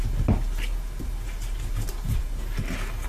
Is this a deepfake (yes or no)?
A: no